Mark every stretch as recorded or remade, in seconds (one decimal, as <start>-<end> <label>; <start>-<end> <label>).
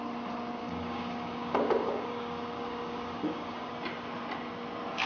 0.0-0.6 recorded; 0.6-3.7 remade; 3.7-5.1 recorded